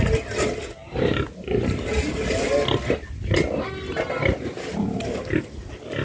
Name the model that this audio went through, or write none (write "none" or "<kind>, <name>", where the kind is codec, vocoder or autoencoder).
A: none